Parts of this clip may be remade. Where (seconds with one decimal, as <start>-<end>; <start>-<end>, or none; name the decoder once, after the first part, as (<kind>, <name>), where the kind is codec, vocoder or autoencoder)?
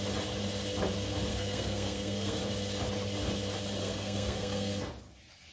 1.3-2.4 (codec, SNAC); 3.8-4.9